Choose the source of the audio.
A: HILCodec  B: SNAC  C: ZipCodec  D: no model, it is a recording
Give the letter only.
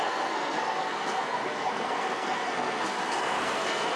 B